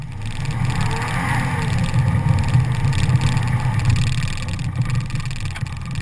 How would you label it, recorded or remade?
recorded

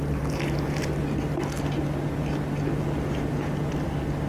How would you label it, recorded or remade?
recorded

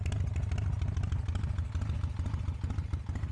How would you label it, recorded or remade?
recorded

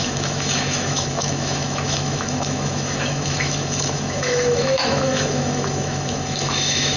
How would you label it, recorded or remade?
remade